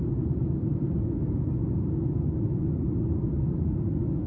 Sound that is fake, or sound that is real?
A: real